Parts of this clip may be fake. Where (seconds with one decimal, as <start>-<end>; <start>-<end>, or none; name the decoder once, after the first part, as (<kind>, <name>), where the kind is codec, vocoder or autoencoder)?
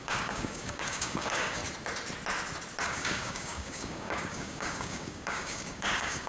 0.0-1.6 (codec, DAC); 2.8-6.3